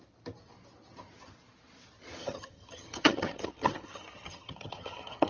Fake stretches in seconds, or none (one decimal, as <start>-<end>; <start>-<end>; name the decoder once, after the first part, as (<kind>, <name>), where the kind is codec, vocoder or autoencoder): 2.2-5.3 (vocoder, HiFi-GAN)